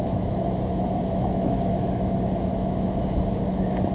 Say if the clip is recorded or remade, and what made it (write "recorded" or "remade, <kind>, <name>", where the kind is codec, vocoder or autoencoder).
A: remade, autoencoder, DAC-VAE